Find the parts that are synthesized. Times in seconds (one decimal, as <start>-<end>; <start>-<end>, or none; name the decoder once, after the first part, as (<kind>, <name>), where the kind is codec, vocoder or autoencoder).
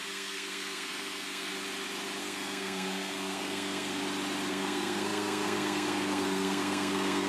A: 0.0-1.5 (codec, SNAC); 2.2-4.0; 4.5-7.3